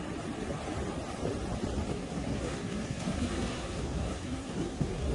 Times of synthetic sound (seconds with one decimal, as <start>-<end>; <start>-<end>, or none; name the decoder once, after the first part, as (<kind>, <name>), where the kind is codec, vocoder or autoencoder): 1.9-5.1 (codec, SNAC)